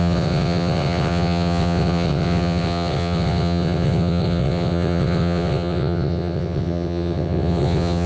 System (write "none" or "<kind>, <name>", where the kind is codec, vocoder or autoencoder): vocoder, WaveNeXt